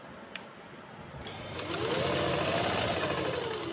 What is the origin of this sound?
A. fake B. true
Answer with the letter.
B